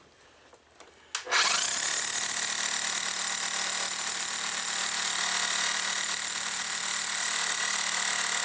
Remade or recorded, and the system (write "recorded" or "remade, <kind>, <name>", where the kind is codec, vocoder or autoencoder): recorded